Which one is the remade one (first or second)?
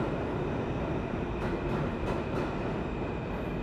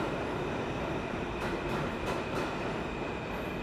second